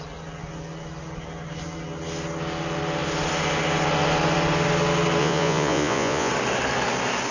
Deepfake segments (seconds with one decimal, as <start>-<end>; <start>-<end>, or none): 5.2-6.3